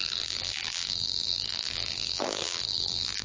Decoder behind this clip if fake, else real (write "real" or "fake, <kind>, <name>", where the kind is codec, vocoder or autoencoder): fake, vocoder, BigVGAN v2